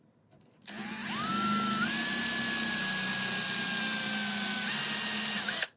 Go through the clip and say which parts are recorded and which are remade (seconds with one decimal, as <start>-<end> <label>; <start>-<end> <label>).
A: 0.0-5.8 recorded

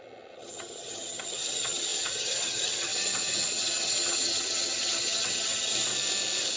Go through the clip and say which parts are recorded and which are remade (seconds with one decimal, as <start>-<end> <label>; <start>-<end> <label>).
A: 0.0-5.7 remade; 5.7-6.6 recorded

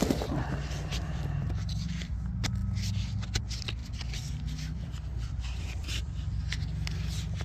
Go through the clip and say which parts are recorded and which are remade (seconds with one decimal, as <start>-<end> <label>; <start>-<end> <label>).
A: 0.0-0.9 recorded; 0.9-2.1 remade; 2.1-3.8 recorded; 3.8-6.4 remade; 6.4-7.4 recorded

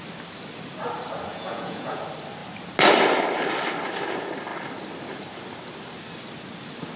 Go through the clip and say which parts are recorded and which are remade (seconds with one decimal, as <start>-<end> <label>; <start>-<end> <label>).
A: 0.0-1.3 recorded; 1.3-2.0 remade; 2.0-7.0 recorded